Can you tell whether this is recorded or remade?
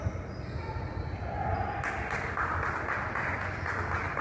recorded